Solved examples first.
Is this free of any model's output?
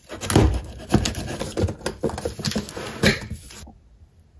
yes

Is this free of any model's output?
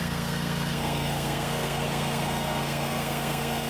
no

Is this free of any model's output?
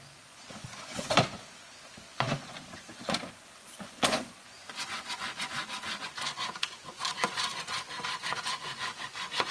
no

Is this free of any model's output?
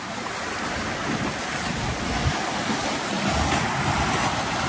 yes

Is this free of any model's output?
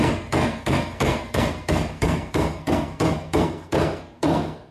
no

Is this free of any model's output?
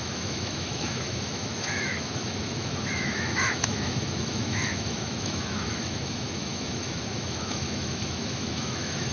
no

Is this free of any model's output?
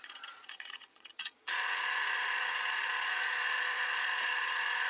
no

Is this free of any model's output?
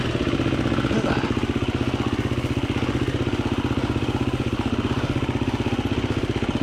yes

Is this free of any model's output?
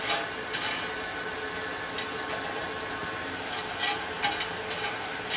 yes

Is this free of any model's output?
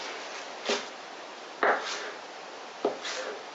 yes